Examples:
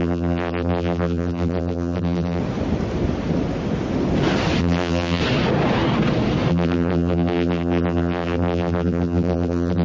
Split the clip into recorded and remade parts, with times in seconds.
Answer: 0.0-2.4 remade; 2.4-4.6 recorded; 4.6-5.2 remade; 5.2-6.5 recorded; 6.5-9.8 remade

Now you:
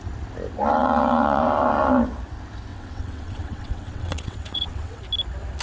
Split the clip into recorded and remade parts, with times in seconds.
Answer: 0.0-0.8 recorded; 0.8-1.4 remade; 1.4-2.7 recorded; 2.7-5.0 remade; 5.0-5.6 recorded

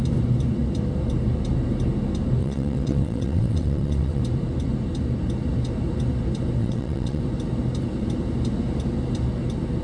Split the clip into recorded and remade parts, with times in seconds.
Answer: 0.0-2.4 recorded; 2.4-4.2 remade; 4.2-6.6 recorded; 6.6-7.2 remade; 7.2-9.8 recorded

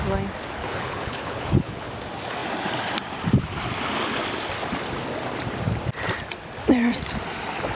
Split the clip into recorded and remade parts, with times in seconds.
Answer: 0.0-0.6 recorded; 0.6-1.9 remade; 1.9-7.7 recorded